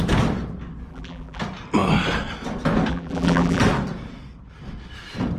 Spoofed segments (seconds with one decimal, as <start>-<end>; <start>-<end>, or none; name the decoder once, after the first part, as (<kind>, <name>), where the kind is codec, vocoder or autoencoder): 0.9-1.4 (vocoder, BigVGAN v2); 2.9-3.6